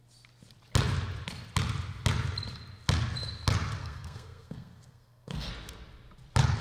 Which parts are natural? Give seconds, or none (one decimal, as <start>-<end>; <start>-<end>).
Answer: 0.0-3.8; 5.5-6.6

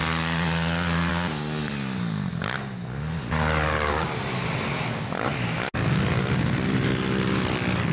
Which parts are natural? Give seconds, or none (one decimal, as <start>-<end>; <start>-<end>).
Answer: 0.0-7.9